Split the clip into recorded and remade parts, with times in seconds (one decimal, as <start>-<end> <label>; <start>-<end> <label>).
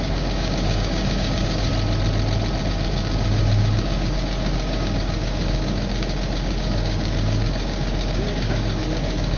0.0-1.7 remade; 1.7-2.6 recorded; 2.6-9.4 remade